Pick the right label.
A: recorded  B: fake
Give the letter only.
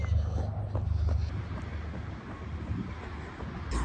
A